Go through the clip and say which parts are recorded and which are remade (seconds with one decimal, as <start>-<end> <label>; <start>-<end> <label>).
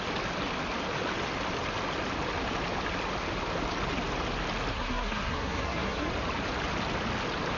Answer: 0.0-4.7 recorded; 4.7-6.1 remade; 6.1-7.6 recorded